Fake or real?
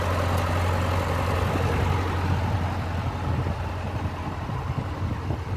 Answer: real